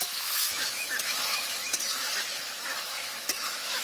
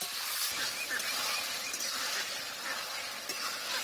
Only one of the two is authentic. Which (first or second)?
second